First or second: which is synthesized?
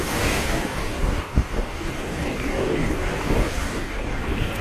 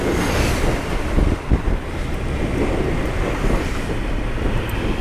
first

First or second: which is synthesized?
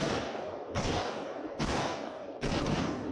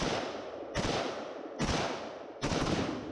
first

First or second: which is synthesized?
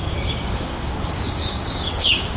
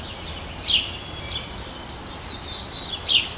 first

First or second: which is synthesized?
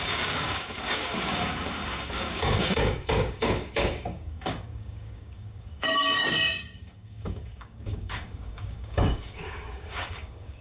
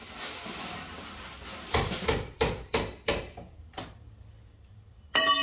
first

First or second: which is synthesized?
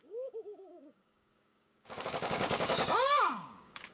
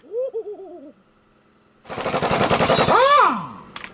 first